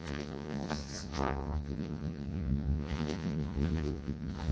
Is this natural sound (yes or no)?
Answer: no